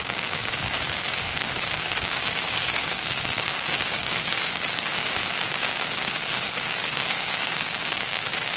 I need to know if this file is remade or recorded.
remade